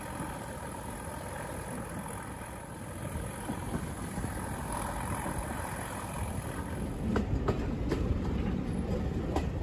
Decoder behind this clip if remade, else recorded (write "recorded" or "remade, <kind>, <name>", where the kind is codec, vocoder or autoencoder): recorded